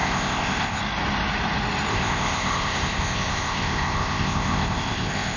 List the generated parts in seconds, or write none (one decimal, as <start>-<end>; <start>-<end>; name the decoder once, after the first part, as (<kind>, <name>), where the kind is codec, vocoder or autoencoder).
0.0-0.8 (codec, ZipCodec); 1.9-5.4